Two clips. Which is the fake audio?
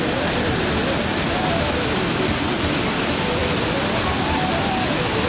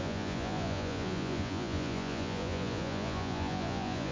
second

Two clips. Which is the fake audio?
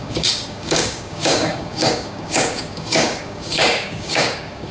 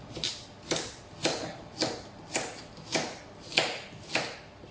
first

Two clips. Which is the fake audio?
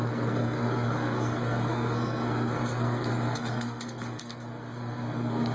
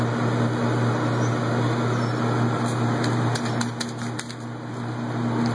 first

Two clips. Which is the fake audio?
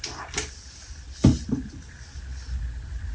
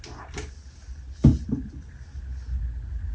first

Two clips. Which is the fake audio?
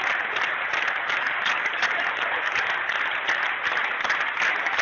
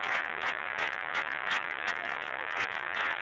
second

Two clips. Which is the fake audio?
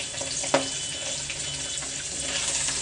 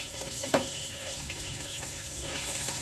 second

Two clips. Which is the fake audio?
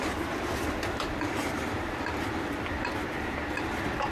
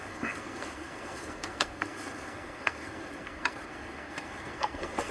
second